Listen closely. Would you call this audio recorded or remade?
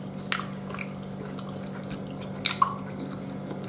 recorded